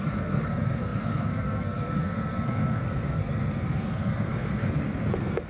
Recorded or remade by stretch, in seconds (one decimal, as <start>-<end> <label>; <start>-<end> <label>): 0.0-5.5 remade